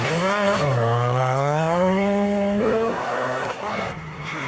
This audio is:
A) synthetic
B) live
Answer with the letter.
A